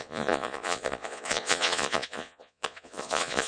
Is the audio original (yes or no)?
no